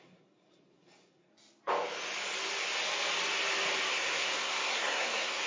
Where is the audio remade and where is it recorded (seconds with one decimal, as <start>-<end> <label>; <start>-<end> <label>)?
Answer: 0.0-1.3 remade; 1.3-3.9 recorded; 3.9-5.5 remade